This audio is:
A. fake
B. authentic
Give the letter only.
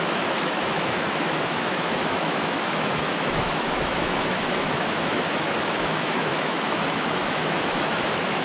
A